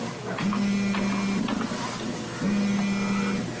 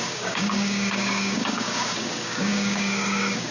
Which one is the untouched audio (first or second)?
first